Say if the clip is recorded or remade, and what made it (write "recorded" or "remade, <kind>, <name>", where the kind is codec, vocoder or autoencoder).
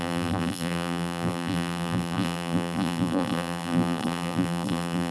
remade, vocoder, BigVGAN v2